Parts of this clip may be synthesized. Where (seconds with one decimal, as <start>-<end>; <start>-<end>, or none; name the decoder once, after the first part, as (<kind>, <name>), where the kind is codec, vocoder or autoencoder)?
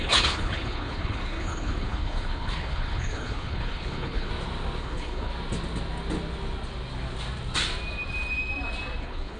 0.0-4.3 (codec, HILCodec); 4.8-5.3; 9.0-9.4